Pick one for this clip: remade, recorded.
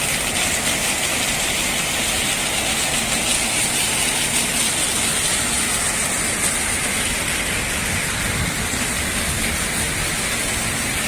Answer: recorded